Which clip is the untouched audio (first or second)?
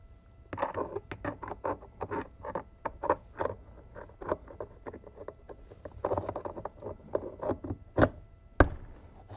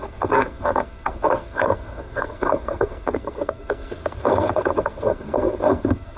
first